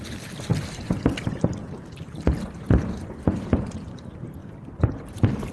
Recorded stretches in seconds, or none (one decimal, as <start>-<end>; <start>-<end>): 0.0-5.5